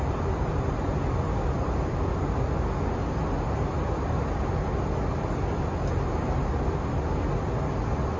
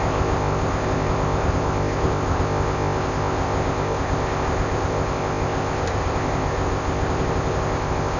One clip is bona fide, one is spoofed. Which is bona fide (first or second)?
first